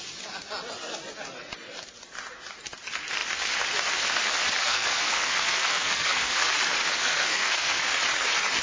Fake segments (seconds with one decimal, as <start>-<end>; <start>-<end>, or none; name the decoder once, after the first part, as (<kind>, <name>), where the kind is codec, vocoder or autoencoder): 4.6-6.5 (codec, SNAC); 7.0-7.8